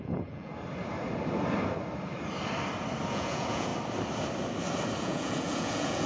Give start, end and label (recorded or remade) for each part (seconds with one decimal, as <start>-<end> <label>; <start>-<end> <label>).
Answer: 0.0-0.5 remade; 0.5-3.1 recorded; 3.1-3.7 remade; 3.7-5.0 recorded; 5.0-6.1 remade